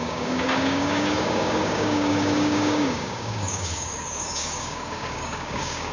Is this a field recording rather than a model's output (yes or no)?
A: no